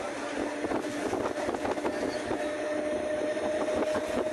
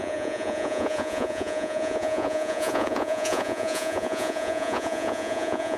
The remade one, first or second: second